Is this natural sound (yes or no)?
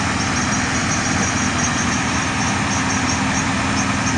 yes